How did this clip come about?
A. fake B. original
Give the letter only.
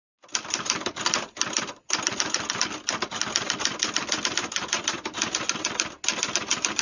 B